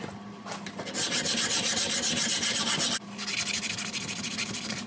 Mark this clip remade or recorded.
recorded